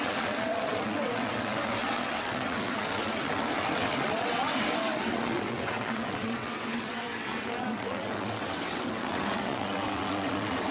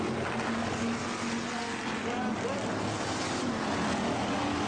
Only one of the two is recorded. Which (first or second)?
second